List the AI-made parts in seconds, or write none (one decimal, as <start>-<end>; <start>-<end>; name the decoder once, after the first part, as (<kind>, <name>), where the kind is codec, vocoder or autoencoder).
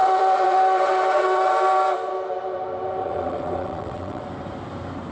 0.0-1.5 (vocoder, WaveNeXt); 3.0-4.2